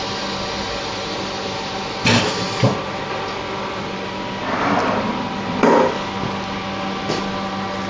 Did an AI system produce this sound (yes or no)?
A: no